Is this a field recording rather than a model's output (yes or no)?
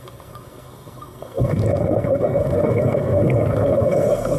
no